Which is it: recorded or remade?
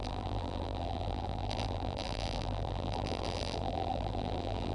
remade